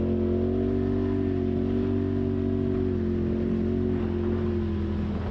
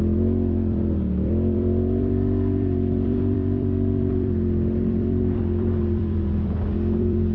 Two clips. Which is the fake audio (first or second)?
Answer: second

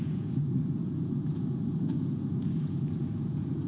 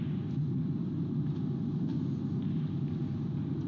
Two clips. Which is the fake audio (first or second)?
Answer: first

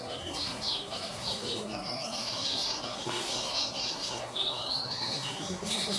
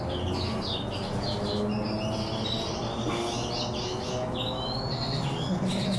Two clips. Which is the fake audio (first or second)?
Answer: first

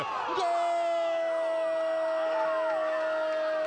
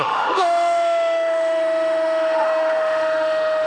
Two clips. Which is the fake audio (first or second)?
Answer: second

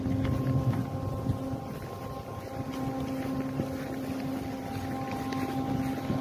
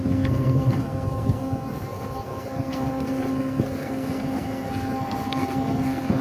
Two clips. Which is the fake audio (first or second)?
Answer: second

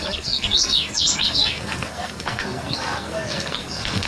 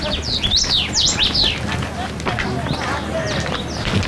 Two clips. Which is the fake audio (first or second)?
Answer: first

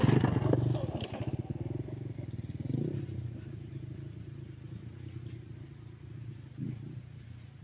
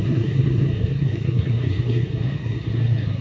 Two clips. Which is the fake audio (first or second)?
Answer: second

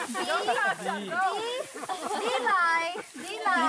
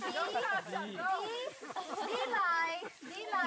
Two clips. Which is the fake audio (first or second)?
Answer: second